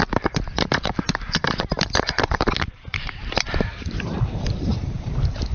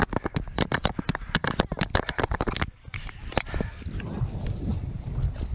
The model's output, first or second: first